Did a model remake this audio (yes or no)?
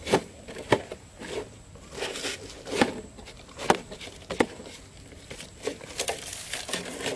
no